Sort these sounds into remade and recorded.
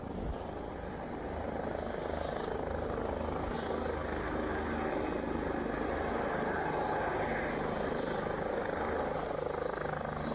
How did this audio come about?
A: recorded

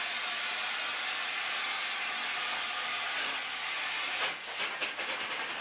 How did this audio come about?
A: recorded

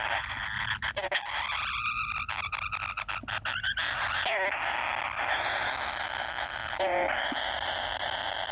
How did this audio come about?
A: recorded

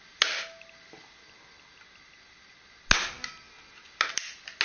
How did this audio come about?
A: recorded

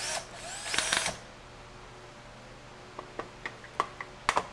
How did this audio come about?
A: recorded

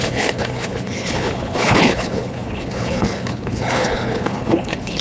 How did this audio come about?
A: remade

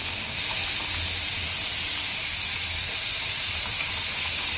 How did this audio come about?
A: recorded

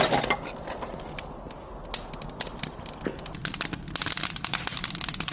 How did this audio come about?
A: recorded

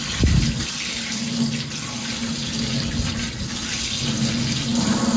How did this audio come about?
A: recorded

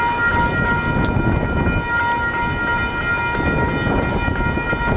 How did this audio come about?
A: recorded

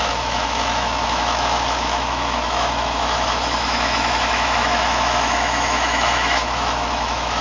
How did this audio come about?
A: remade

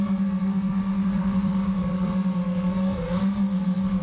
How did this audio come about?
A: remade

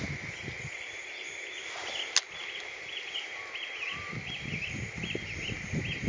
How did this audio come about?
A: recorded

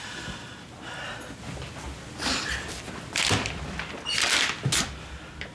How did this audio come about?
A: recorded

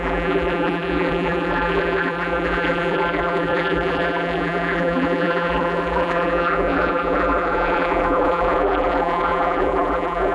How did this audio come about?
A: remade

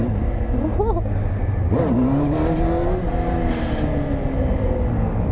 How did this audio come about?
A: recorded